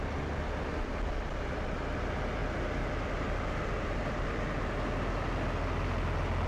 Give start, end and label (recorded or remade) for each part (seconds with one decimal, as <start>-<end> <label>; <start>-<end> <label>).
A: 0.0-6.5 recorded